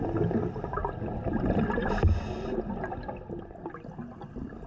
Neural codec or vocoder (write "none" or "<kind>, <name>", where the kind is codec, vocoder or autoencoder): none